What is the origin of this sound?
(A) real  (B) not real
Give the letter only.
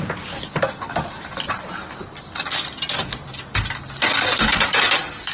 A